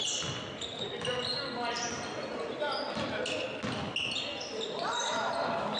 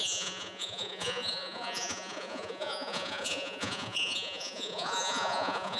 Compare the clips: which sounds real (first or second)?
first